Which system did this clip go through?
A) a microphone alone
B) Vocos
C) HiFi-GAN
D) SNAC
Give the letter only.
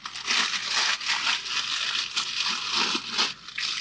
A